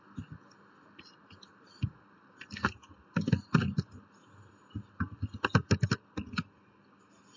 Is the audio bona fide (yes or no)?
yes